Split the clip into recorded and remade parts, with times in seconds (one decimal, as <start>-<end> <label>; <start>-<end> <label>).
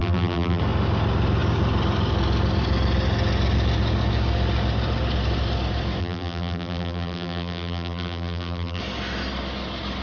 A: 0.0-0.6 remade; 0.6-6.0 recorded; 6.0-8.8 remade; 8.8-10.0 recorded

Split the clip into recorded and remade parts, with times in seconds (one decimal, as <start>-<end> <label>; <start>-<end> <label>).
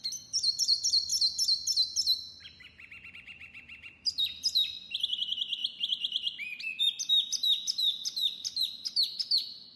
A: 0.0-1.1 remade; 1.1-3.1 recorded; 3.1-9.8 remade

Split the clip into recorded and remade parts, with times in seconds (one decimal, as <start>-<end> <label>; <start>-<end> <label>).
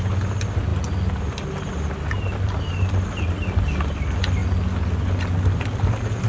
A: 0.0-6.3 recorded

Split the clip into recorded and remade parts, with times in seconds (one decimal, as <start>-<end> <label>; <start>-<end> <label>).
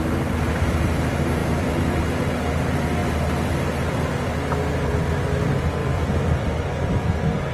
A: 0.0-1.4 recorded; 1.4-2.0 remade; 2.0-5.8 recorded; 5.8-6.6 remade; 6.6-7.5 recorded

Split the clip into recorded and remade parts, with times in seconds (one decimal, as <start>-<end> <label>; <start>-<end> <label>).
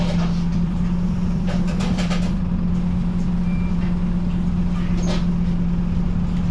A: 0.0-0.5 recorded; 0.5-2.4 remade; 2.4-6.5 recorded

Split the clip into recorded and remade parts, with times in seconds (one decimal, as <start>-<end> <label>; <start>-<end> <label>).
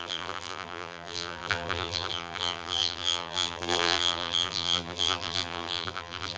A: 0.0-6.4 remade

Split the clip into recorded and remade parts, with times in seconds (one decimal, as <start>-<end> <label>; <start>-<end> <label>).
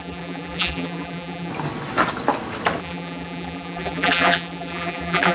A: 0.0-1.5 remade; 1.5-2.8 recorded; 2.8-5.3 remade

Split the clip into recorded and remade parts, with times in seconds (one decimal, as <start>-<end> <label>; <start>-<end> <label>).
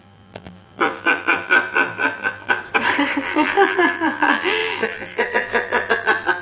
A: 0.0-2.6 remade; 2.6-3.2 recorded; 3.2-6.4 remade